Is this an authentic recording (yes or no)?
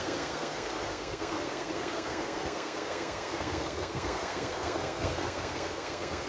no